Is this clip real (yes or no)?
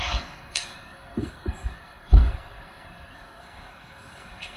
no